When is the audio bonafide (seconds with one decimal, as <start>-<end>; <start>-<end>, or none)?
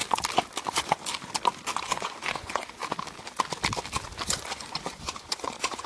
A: 0.0-0.7; 1.1-1.8; 2.8-4.3